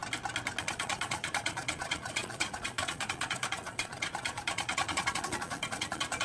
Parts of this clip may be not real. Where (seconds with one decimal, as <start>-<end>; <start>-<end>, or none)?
0.6-6.2